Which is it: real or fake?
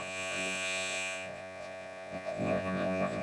fake